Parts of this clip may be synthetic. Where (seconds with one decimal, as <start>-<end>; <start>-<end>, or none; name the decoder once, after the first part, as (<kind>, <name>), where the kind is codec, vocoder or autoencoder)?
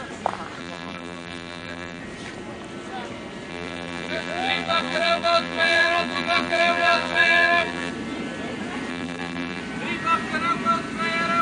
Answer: 0.6-2.0 (vocoder, BigVGAN v2); 3.5-7.9; 8.9-9.6